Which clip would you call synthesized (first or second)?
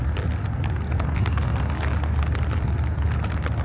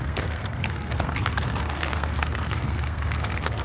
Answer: second